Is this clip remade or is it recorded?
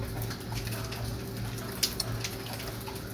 recorded